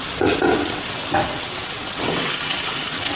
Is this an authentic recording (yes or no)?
no